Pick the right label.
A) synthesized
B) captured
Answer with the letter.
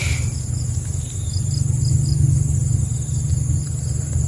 B